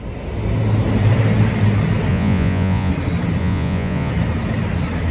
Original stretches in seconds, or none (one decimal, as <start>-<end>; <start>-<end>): 0.0-2.1; 2.9-3.4; 4.1-5.1